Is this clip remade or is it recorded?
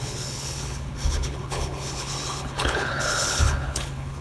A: remade